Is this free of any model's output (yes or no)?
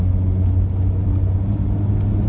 yes